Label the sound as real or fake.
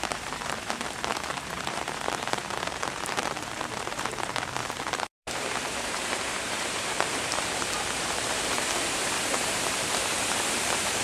fake